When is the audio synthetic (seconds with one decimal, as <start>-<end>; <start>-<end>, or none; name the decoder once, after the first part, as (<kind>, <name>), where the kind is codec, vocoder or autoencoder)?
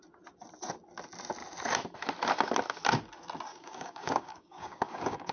3.5-5.3 (codec, DAC)